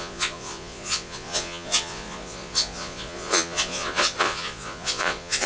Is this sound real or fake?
fake